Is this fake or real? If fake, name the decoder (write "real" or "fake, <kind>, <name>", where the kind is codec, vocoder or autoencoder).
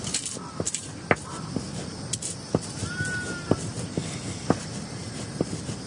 real